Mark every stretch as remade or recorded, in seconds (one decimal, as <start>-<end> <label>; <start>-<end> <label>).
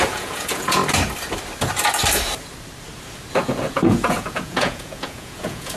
0.0-0.8 remade; 0.8-3.3 recorded; 3.3-5.8 remade